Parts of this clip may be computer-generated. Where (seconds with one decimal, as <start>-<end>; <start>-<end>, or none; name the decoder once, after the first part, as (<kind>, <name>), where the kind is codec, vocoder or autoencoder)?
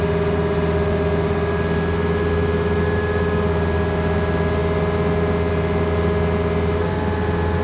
none